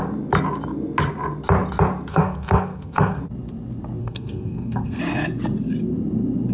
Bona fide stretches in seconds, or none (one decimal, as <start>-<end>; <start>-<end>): 0.0-2.1; 3.2-4.0; 5.0-6.5

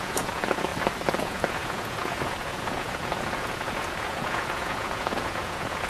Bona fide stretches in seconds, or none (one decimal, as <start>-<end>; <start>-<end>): 0.7-1.2

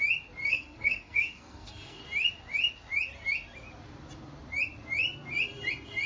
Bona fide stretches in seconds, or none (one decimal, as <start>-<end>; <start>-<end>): 0.0-0.4; 2.0-6.1

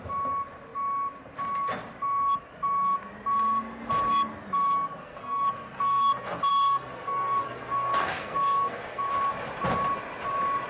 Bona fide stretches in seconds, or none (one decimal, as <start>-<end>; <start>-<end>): 0.0-5.0; 6.1-6.5; 9.2-10.7

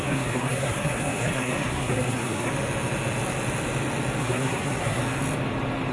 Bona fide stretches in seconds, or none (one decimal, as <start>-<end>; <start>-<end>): 2.5-4.2; 5.0-5.9

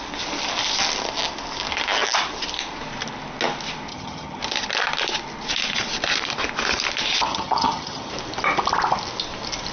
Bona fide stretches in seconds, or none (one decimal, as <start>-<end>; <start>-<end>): 0.0-3.9; 4.4-7.3; 8.1-9.7